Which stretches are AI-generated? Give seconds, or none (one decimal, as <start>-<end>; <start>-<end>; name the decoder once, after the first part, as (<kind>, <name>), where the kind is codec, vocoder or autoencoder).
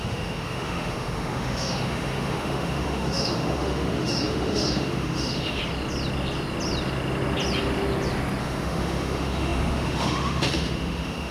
0.0-5.6 (autoencoder, DAC-VAE); 8.4-11.3